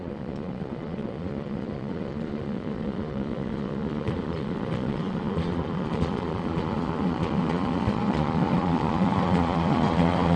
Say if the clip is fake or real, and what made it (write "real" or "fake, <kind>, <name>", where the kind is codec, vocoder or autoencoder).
fake, vocoder, Vocos